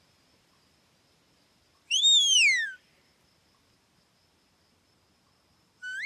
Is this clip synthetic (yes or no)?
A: no